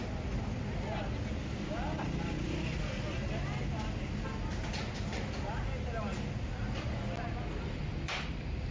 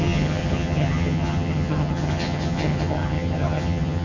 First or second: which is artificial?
second